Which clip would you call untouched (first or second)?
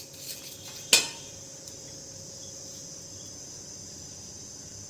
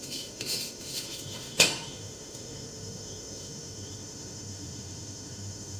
first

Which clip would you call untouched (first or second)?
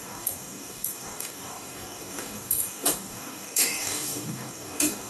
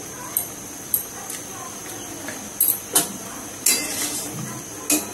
second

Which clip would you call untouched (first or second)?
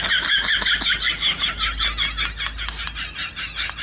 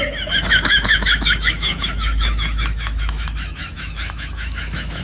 first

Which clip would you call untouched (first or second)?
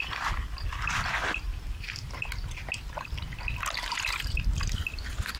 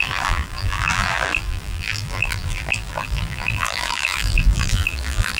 first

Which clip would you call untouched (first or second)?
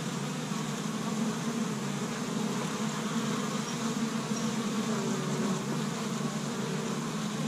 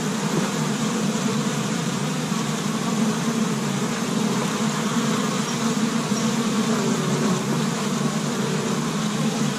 first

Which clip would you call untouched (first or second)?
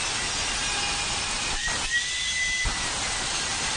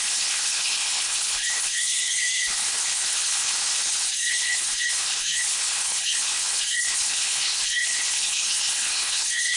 first